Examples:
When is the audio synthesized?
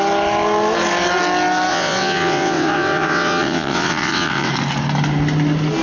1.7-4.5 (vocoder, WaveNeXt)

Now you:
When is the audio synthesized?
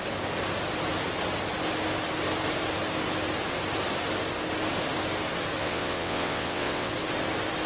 5.6-6.9 (vocoder, WaveNeXt)